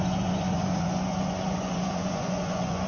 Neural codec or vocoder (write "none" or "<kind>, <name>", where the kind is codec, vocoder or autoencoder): vocoder, Vocos